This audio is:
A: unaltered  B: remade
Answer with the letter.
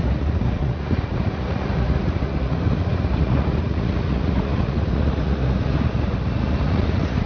B